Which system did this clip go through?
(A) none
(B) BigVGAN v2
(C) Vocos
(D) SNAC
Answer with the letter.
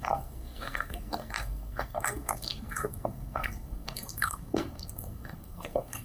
D